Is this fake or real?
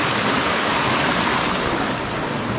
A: real